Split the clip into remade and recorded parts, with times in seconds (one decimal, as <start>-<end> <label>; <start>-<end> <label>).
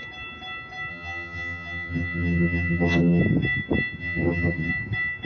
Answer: 0.0-0.9 recorded; 0.9-3.2 remade; 3.2-4.0 recorded; 4.0-4.7 remade; 4.7-5.3 recorded